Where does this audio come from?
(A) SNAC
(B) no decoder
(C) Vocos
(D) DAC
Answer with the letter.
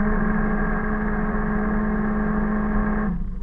B